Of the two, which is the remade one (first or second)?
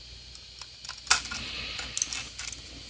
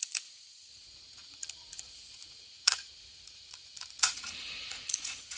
second